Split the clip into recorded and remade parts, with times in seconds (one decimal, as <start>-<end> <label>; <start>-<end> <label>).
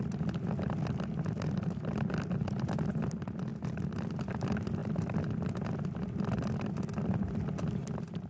0.0-8.3 recorded